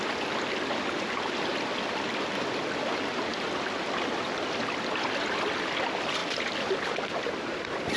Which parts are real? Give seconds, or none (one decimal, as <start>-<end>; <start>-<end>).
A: none